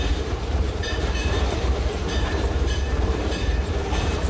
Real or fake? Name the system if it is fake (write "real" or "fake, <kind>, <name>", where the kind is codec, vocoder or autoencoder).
fake, vocoder, BigVGAN v2